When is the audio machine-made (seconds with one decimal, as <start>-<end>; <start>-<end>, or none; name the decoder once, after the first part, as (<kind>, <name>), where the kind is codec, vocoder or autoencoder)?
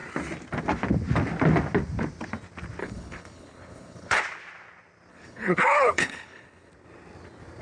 2.8-4.2 (codec, HILCodec); 5.1-6.7